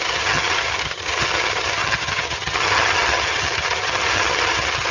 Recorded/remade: remade